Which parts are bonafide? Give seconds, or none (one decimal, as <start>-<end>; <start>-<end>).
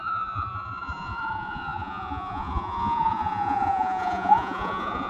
none